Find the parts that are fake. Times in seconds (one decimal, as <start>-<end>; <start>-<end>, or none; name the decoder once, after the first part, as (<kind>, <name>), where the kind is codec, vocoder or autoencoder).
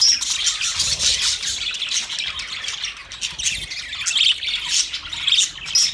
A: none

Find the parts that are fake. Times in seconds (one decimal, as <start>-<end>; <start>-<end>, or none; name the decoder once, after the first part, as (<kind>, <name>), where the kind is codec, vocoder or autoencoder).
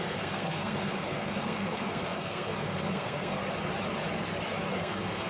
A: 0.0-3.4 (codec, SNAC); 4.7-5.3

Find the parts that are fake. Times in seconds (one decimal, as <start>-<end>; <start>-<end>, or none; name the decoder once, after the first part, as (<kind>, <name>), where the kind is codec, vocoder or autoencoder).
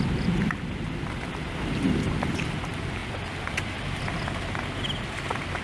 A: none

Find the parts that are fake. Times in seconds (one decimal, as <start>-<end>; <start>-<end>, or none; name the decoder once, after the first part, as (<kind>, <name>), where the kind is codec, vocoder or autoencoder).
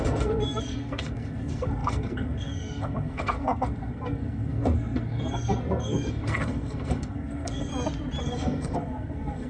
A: 0.0-7.7 (codec, SNAC); 8.2-9.5